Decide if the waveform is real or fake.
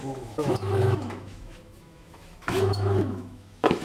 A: fake